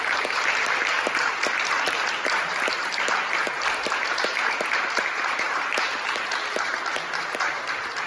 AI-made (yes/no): yes